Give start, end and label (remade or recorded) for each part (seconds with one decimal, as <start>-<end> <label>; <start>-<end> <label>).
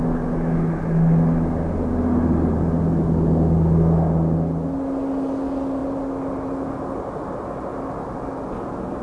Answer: 0.0-9.0 recorded